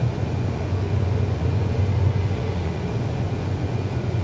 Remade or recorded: remade